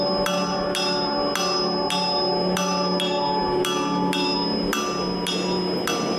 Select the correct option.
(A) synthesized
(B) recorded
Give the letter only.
B